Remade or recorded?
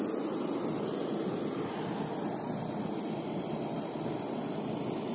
recorded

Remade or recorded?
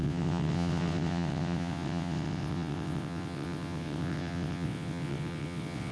remade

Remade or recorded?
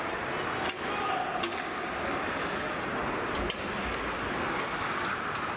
recorded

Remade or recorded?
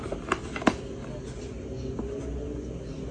recorded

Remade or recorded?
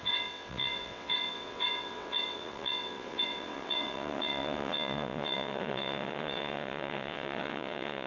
remade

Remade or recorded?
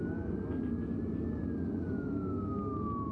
recorded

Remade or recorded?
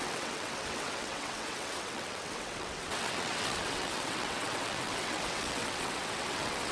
remade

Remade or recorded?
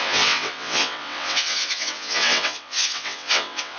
remade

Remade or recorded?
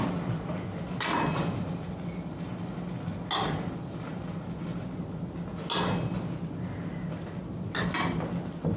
recorded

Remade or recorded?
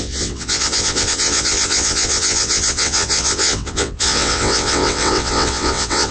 remade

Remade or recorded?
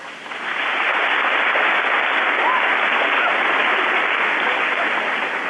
recorded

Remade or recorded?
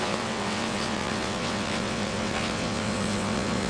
remade